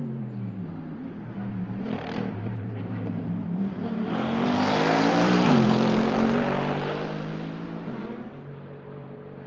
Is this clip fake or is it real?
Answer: fake